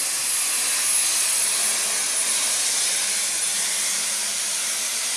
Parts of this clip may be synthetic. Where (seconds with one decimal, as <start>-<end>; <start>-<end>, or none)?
3.5-5.2